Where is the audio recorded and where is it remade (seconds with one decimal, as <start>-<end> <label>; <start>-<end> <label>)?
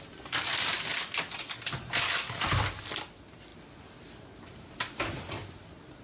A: 0.0-0.9 remade; 0.9-2.4 recorded; 2.4-3.5 remade; 3.5-5.6 recorded; 5.6-6.0 remade